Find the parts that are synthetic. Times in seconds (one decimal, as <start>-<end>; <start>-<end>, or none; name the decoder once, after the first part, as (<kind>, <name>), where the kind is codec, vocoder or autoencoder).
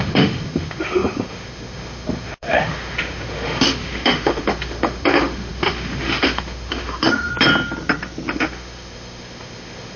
0.0-7.3 (autoencoder, DAC-VAE); 8.3-10.0